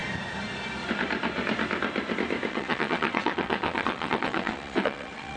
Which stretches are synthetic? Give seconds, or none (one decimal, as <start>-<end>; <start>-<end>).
2.5-5.4